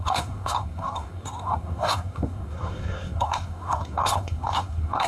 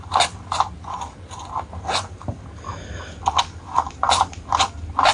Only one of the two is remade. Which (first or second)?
first